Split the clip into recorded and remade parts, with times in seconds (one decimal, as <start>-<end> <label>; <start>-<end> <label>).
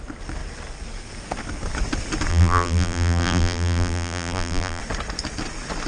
0.0-2.3 recorded; 2.3-4.8 remade; 4.8-5.9 recorded